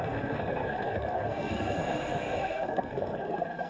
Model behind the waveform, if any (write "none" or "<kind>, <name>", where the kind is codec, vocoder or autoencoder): codec, SNAC